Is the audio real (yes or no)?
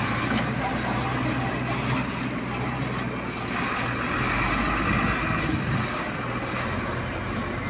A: yes